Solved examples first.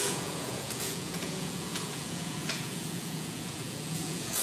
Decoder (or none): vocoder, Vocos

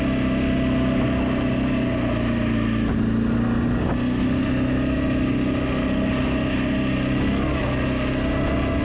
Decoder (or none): none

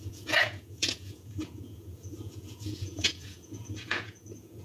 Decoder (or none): vocoder, Vocos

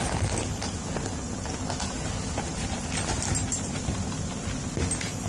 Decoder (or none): none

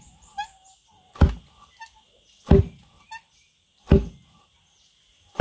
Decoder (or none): none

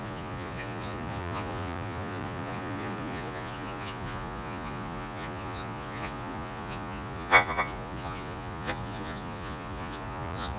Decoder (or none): vocoder, Vocos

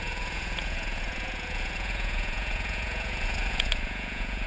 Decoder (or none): vocoder, Vocos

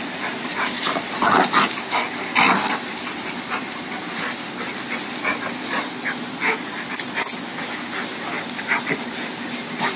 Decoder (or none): none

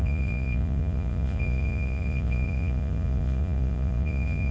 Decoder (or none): vocoder, Vocos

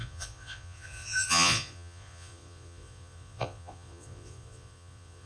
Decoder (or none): vocoder, Vocos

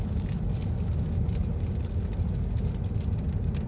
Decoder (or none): none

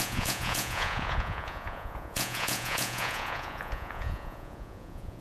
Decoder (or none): vocoder, Vocos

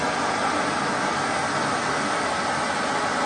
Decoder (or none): none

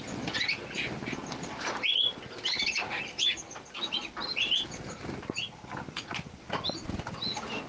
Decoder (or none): none